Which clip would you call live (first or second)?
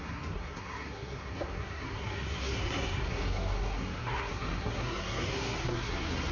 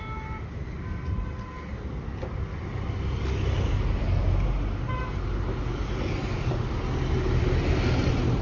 second